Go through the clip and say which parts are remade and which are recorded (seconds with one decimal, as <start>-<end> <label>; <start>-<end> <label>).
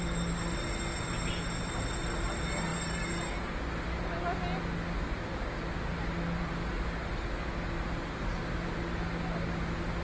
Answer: 0.0-10.0 recorded